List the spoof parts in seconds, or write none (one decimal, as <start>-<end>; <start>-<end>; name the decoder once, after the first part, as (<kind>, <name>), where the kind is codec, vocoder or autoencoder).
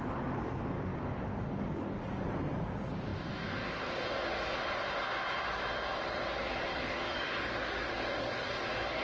0.9-2.3 (codec, DAC); 6.7-8.6